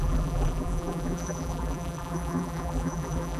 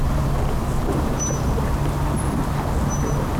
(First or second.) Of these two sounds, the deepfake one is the first